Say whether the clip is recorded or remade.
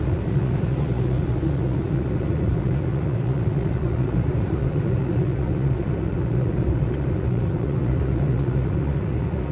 remade